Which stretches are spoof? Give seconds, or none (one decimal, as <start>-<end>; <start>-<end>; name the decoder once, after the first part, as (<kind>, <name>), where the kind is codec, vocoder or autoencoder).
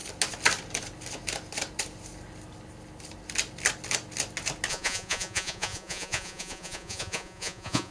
4.7-7.9 (vocoder, Vocos)